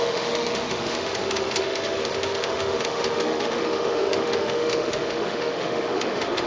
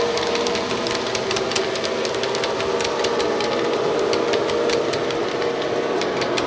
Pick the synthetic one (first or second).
first